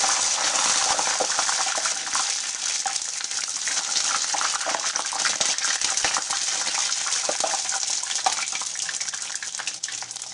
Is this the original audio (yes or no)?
yes